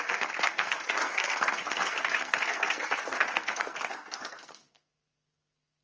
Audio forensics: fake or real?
fake